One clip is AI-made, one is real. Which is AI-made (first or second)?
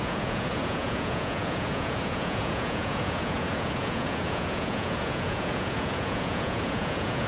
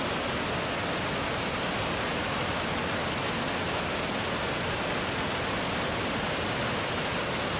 first